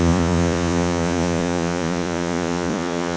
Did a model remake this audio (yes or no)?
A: yes